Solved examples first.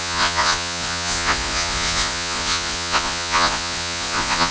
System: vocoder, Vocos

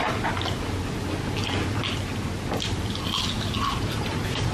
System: none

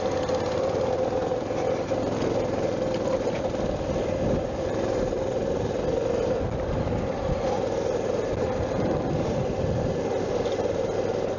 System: none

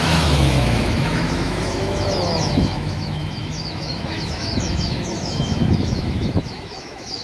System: autoencoder, DAC-VAE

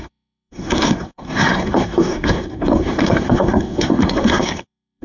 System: codec, SNAC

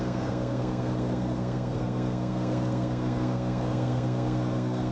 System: codec, SNAC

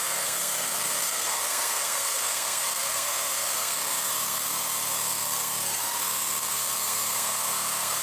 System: codec, SNAC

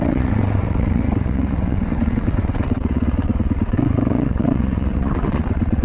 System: vocoder, WaveNeXt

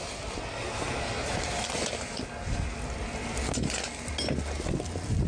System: none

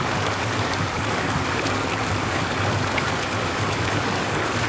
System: codec, DAC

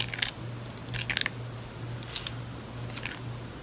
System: none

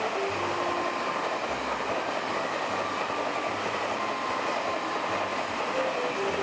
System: none